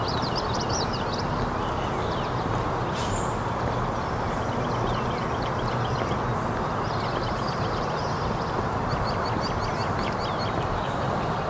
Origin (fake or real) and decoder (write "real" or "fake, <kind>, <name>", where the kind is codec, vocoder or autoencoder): real